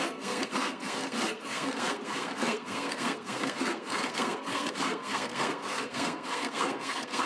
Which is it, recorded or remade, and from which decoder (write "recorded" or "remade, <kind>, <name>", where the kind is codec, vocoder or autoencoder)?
remade, codec, SNAC